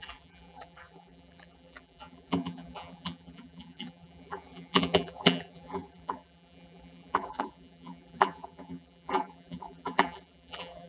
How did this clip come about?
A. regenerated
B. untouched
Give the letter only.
A